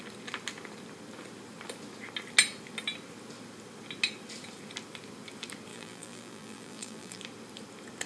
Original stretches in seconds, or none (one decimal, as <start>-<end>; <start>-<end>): 0.0-5.7; 7.2-8.1